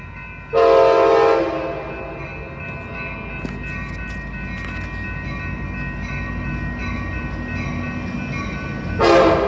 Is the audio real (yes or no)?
yes